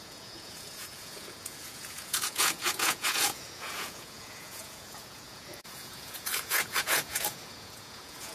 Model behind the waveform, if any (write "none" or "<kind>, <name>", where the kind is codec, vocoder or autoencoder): vocoder, Vocos